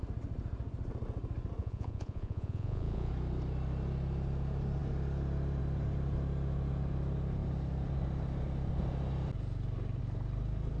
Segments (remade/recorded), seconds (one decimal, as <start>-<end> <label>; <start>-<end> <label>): 0.0-1.6 recorded; 1.6-3.1 remade; 3.1-10.8 recorded

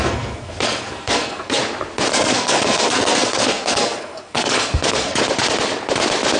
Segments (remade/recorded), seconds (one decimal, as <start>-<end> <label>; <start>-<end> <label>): 0.0-1.6 remade; 1.6-2.1 recorded; 2.1-5.2 remade; 5.2-6.4 recorded

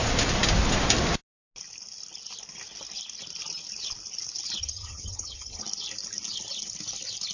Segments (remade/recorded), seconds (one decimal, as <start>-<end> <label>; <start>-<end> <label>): 0.0-4.6 recorded; 4.6-5.6 remade; 5.6-7.3 recorded

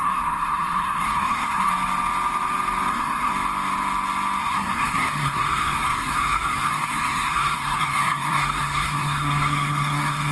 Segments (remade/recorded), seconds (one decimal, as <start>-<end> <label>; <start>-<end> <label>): 0.0-1.7 remade; 1.7-2.9 recorded; 2.9-3.3 remade; 3.3-4.4 recorded; 4.4-10.3 remade

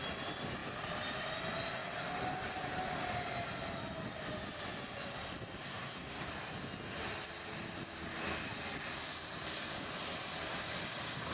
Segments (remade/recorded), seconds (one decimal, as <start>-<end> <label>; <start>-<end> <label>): 0.0-5.6 recorded; 5.6-6.3 remade; 6.3-11.3 recorded

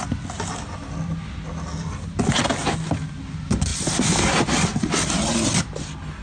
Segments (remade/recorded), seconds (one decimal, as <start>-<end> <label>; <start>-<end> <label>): 0.0-6.2 recorded

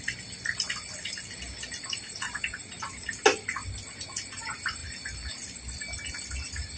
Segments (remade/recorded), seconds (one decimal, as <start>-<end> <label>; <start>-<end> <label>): 0.0-6.8 recorded